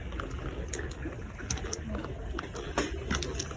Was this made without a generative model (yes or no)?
yes